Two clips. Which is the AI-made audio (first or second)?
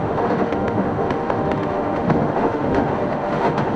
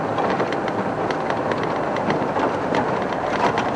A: first